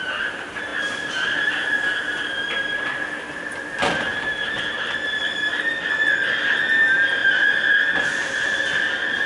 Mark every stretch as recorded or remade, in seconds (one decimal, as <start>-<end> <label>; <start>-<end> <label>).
0.0-7.2 recorded; 7.2-8.6 remade; 8.6-9.3 recorded

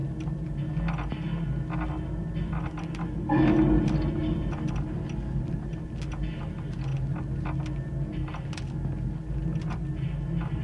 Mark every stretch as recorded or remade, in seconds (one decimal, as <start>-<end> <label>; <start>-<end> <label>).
0.0-10.6 recorded

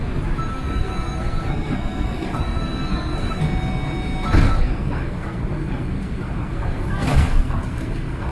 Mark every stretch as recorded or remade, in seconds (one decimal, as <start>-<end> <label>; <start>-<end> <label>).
0.0-0.5 recorded; 0.5-3.4 remade; 3.4-4.4 recorded; 4.4-8.3 remade

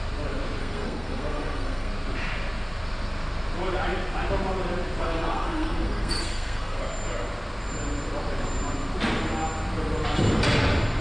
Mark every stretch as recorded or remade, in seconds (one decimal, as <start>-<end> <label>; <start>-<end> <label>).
0.0-0.6 recorded; 0.6-1.9 remade; 1.9-5.0 recorded; 5.0-6.8 remade; 6.8-11.0 recorded

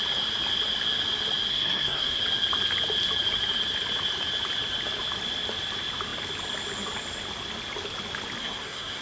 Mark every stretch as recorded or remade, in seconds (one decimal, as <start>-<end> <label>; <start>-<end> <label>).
0.0-1.5 recorded; 1.5-2.2 remade; 2.2-8.4 recorded; 8.4-9.0 remade

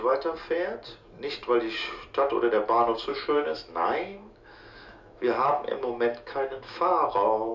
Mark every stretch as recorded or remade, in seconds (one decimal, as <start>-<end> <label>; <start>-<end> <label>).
0.0-3.1 recorded; 3.1-7.5 remade

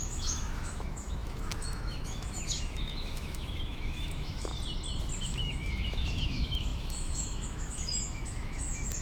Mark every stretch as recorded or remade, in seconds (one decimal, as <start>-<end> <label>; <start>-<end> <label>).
0.0-4.5 remade; 4.5-5.2 recorded; 5.2-9.0 remade